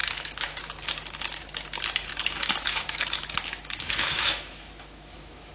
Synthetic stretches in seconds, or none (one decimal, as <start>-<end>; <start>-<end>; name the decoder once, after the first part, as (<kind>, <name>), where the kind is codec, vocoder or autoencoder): 0.0-0.7 (autoencoder, DAC-VAE); 2.1-5.5